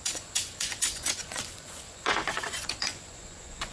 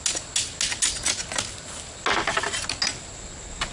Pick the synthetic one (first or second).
first